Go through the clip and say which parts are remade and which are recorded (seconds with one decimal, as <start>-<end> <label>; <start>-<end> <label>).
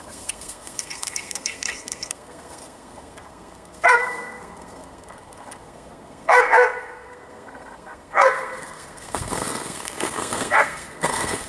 0.0-11.5 remade